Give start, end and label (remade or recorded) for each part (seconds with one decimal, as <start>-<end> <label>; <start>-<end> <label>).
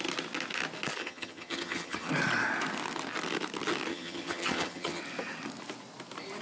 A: 0.0-1.0 recorded; 1.0-2.1 remade; 2.1-3.9 recorded; 3.9-5.0 remade; 5.0-6.4 recorded